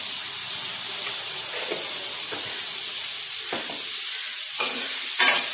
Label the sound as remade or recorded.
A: recorded